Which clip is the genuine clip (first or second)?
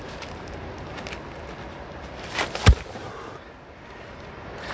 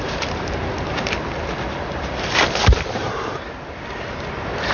first